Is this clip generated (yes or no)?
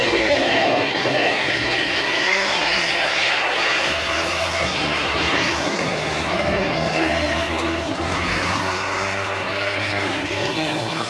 yes